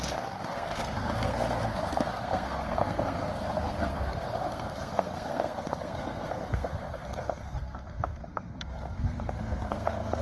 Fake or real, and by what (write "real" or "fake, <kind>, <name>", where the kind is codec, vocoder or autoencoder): fake, codec, SNAC